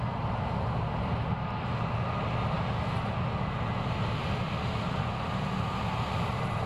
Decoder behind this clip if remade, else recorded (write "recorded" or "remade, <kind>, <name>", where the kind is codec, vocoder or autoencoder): recorded